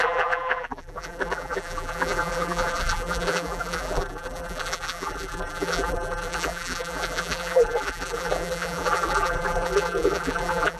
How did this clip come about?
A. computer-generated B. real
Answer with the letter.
A